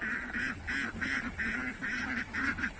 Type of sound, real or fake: real